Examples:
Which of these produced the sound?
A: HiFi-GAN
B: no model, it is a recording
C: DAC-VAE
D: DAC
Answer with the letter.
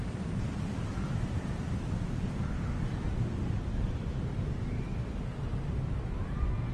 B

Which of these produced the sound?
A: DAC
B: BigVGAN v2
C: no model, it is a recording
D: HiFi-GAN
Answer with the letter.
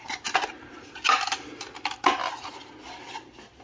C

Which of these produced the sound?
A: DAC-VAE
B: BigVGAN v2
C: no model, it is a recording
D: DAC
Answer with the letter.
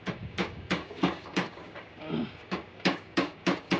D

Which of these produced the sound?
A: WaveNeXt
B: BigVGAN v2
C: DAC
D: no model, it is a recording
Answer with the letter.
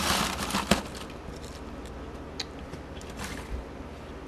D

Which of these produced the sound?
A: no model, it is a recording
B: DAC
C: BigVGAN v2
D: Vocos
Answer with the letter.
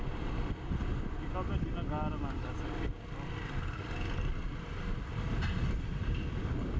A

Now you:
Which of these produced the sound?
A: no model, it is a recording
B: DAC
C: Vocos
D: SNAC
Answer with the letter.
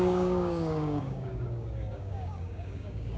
B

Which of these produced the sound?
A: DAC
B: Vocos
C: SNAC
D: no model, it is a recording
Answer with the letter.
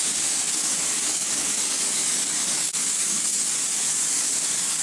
A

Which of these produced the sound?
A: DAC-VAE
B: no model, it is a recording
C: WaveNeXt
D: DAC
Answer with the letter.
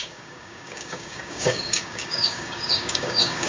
D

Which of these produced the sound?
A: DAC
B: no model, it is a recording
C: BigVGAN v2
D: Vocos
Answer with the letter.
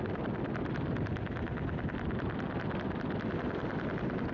B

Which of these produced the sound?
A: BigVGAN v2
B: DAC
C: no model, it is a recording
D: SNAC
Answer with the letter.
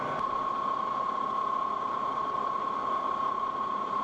C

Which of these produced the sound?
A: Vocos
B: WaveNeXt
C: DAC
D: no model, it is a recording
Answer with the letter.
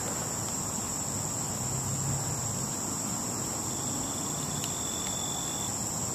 D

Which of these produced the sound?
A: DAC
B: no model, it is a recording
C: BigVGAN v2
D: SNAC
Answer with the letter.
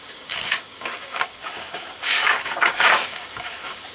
A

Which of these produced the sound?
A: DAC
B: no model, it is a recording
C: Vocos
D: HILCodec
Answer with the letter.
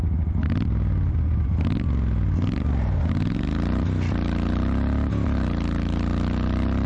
B